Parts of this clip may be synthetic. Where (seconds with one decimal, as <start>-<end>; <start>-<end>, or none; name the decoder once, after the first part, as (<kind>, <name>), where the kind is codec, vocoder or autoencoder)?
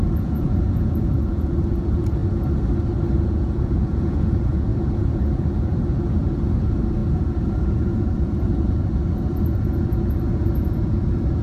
0.0-2.2 (vocoder, Vocos); 3.2-11.4